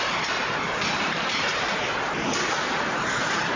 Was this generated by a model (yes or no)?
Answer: no